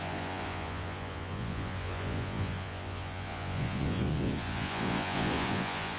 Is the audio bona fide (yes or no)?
no